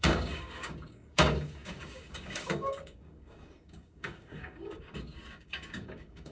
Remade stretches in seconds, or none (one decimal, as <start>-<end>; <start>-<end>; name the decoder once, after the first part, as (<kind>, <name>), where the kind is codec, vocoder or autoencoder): 0.0-6.3 (codec, DAC)